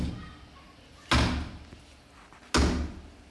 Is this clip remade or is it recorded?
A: recorded